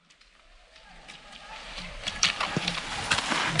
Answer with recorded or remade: recorded